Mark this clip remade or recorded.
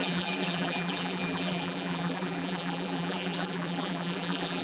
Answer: remade